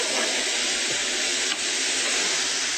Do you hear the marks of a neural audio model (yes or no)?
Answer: no